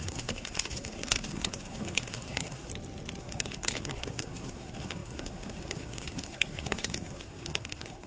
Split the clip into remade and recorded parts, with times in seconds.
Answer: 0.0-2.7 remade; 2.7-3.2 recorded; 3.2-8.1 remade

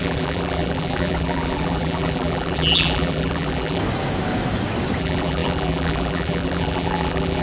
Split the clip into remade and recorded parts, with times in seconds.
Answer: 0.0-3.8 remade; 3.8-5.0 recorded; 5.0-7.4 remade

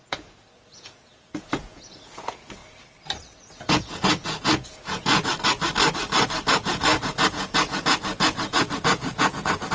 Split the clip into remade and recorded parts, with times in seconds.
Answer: 0.0-2.6 remade; 2.6-3.2 recorded; 3.2-5.3 remade; 5.3-6.4 recorded; 6.4-9.7 remade

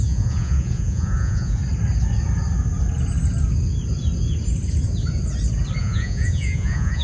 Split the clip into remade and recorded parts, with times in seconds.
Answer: 0.0-1.6 remade; 1.6-5.8 recorded; 5.8-7.0 remade

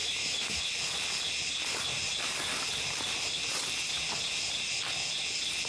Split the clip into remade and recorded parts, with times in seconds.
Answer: 0.0-0.6 remade; 0.6-5.7 recorded

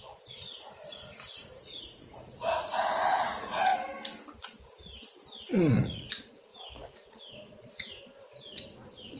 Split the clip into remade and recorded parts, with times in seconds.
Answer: 0.0-3.7 remade; 3.7-5.5 recorded; 5.5-9.2 remade